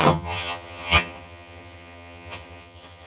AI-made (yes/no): yes